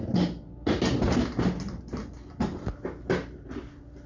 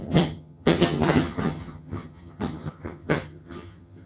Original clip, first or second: first